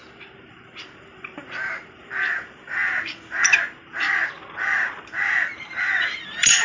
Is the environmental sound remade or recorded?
remade